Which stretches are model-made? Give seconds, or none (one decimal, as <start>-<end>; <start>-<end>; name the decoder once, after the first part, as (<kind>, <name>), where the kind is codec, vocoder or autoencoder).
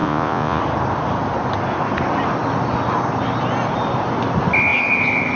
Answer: 0.0-0.6 (vocoder, Vocos)